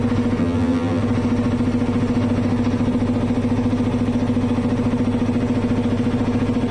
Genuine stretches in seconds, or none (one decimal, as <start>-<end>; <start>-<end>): 0.0-0.4; 1.0-6.7